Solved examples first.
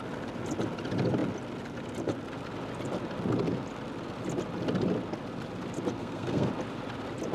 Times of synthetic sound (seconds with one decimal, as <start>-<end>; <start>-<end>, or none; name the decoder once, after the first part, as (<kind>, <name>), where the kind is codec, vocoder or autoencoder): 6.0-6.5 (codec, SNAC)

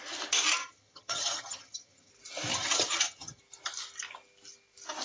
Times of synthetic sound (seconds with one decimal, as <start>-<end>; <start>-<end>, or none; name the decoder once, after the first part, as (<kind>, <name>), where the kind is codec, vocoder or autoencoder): 0.6-2.1 (vocoder, HiFi-GAN); 2.5-3.4

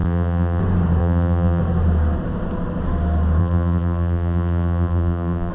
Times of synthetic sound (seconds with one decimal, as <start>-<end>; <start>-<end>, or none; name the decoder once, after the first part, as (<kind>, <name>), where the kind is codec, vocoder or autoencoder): 0.0-0.6 (vocoder, BigVGAN v2); 1.0-1.6; 3.4-5.5